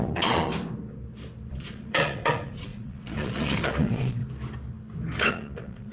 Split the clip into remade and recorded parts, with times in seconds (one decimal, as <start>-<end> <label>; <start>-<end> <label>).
0.0-0.5 remade; 0.5-1.5 recorded; 1.5-4.2 remade; 4.2-5.3 recorded; 5.3-5.9 remade